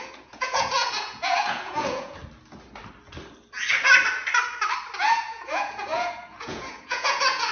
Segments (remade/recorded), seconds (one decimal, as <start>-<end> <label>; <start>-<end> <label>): 0.0-2.2 remade; 2.2-5.0 recorded; 5.0-7.5 remade